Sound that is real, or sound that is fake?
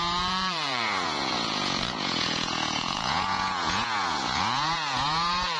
fake